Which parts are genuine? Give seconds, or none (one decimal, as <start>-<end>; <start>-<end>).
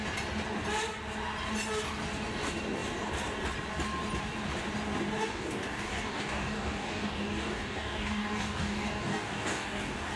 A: 0.0-5.2